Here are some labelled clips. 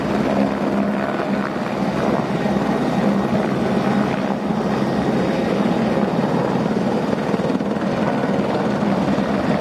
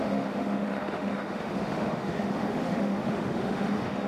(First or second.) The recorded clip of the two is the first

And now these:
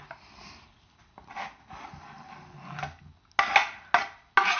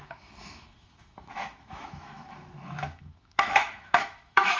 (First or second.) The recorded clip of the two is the first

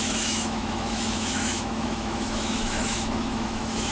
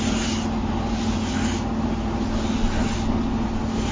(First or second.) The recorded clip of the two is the second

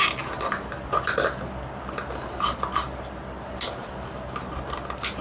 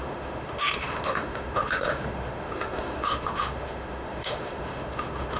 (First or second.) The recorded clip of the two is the first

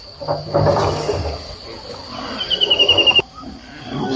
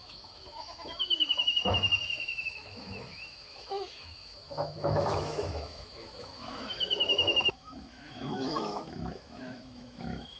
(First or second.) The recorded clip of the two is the first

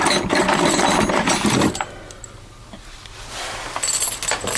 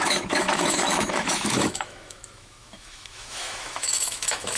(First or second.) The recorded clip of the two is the first